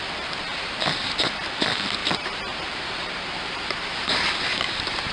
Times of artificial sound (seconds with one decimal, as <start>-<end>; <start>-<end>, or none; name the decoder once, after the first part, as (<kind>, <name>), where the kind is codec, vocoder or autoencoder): 2.0-5.1 (vocoder, BigVGAN v2)